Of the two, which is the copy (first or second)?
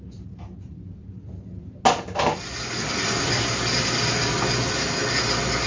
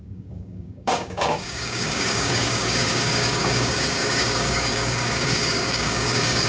second